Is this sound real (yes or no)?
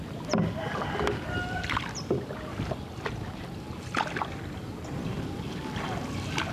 yes